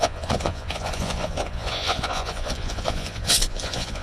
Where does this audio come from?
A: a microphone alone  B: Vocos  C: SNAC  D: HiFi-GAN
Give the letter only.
B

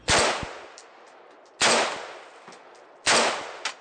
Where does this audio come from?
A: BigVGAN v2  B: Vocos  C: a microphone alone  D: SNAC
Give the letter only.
C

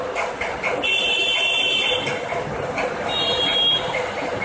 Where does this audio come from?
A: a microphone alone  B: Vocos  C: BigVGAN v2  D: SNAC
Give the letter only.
C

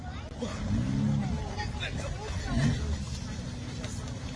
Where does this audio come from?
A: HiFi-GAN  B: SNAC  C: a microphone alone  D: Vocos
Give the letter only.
C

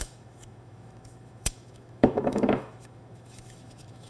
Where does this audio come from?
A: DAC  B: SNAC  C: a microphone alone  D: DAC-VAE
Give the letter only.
D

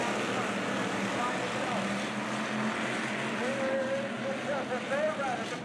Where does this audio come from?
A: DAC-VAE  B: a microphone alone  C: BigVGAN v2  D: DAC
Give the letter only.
B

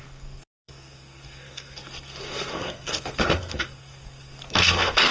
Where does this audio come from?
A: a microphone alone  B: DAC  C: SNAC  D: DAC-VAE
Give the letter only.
C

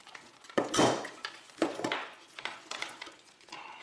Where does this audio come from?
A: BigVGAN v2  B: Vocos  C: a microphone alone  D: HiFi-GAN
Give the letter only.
B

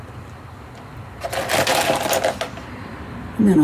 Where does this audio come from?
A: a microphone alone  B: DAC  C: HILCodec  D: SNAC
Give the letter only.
A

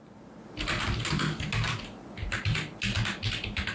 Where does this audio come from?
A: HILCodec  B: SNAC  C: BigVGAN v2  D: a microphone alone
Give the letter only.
D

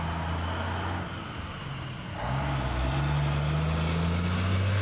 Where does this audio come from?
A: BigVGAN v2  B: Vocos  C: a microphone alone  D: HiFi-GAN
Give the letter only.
C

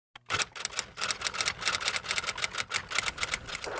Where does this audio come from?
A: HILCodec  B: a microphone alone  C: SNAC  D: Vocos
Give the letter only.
B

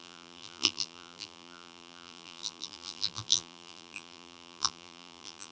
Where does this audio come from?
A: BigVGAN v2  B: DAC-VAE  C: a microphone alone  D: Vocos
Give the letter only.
A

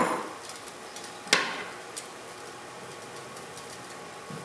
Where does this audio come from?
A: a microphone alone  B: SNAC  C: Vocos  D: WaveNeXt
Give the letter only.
A